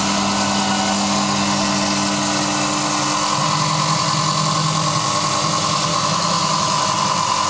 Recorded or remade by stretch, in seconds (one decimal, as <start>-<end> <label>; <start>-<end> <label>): 0.0-5.9 recorded; 5.9-6.8 remade; 6.8-7.5 recorded